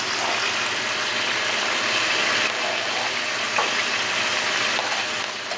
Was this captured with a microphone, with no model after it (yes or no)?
yes